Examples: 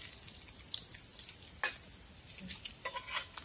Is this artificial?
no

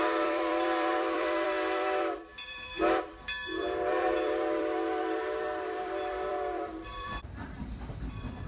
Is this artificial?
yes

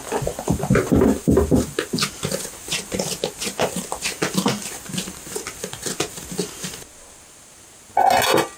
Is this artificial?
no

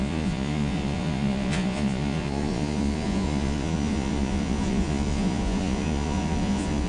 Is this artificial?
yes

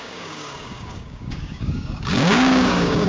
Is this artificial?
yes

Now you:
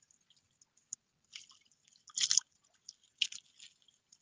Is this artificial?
no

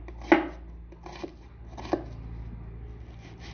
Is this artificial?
no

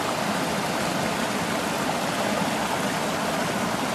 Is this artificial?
no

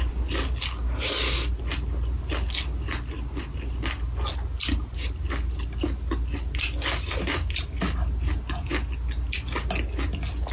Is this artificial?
no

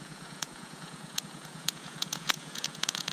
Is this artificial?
yes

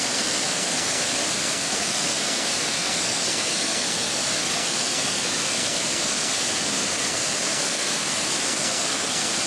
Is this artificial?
yes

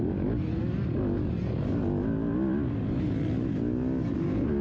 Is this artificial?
no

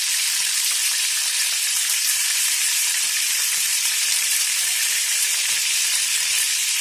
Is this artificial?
yes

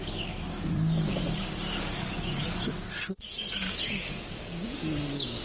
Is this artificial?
yes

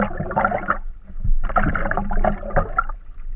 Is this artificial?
no